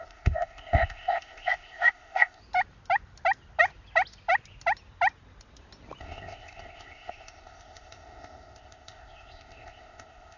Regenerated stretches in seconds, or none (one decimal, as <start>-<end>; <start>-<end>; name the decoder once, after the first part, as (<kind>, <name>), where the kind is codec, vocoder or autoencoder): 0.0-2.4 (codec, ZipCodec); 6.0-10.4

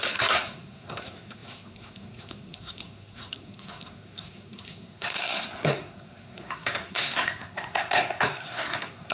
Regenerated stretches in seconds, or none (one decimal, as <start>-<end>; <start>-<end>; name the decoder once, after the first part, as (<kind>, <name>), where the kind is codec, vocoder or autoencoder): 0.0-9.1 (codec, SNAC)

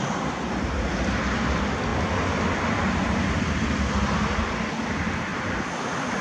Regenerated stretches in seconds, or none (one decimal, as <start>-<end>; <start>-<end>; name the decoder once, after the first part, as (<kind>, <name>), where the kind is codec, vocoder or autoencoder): none